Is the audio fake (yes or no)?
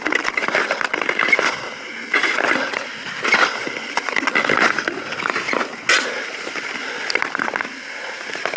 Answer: no